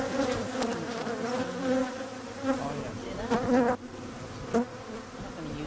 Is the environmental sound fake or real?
real